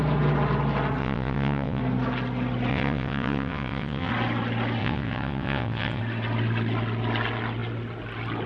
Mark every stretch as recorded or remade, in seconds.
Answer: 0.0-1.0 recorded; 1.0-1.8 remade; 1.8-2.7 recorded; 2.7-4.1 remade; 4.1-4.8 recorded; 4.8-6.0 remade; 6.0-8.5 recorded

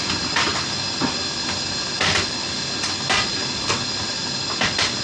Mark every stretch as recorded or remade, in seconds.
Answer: 0.0-5.0 recorded

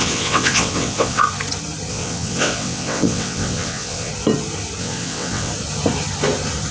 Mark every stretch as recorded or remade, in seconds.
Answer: 0.0-1.2 remade; 1.2-1.9 recorded; 1.9-4.1 remade; 4.1-4.8 recorded; 4.8-5.5 remade; 5.5-6.7 recorded